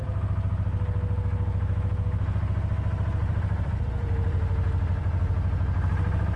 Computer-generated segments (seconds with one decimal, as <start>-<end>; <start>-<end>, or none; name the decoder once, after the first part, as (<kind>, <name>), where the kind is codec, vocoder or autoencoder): 3.2-5.3 (vocoder, BigVGAN v2)